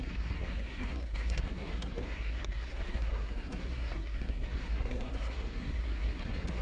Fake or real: fake